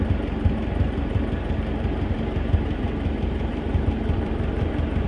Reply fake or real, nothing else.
fake